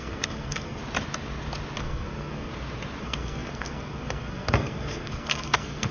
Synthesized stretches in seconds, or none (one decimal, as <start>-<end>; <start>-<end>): 0.0-0.8; 1.8-2.5; 3.0-5.9